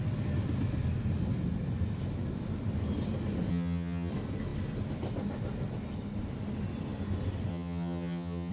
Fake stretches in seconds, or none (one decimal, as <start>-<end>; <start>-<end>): 3.5-4.1; 7.5-8.5